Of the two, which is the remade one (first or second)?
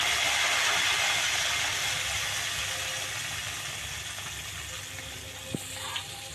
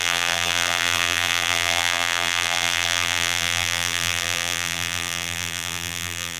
second